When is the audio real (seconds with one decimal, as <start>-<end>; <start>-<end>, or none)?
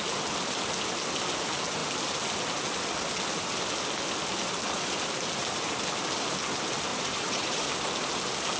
0.0-6.9; 7.7-8.6